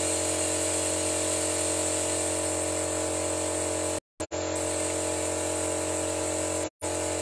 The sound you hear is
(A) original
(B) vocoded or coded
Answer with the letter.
A